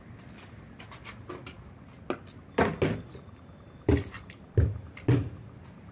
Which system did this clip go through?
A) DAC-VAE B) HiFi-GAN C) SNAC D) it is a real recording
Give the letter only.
D